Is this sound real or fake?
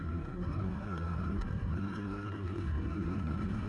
fake